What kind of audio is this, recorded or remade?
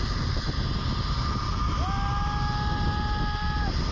recorded